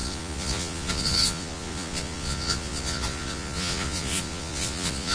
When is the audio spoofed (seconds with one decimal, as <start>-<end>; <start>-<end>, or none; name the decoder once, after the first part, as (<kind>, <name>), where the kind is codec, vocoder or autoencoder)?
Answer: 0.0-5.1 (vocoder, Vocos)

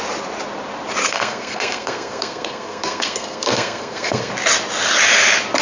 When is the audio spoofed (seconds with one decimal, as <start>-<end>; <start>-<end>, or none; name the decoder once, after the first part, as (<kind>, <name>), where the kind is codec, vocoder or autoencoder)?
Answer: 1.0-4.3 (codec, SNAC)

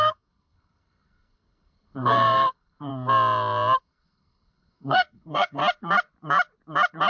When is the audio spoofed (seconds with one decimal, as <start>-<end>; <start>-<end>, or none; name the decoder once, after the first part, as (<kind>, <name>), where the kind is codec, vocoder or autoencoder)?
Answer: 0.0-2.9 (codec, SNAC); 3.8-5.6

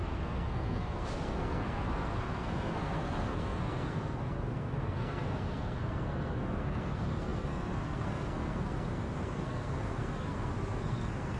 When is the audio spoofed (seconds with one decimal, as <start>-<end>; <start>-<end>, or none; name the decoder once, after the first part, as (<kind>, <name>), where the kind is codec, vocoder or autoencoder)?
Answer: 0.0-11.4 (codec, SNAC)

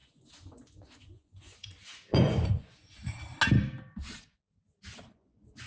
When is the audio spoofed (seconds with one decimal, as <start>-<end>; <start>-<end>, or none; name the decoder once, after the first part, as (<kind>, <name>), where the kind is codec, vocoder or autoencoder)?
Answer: 0.0-3.0 (vocoder, Vocos); 5.1-5.7